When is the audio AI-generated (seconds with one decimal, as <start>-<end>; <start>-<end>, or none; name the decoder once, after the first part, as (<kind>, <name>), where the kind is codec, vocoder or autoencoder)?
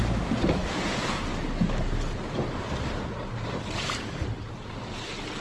0.6-1.2 (vocoder, Vocos)